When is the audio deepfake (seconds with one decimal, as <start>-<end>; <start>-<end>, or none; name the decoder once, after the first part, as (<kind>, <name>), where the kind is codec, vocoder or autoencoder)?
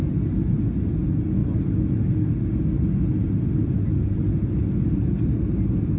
none